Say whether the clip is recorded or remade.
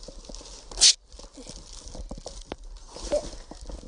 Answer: recorded